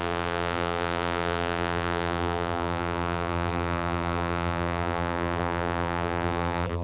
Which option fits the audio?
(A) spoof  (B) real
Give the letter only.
A